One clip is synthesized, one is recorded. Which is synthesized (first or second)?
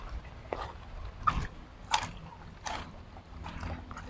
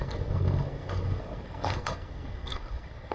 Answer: second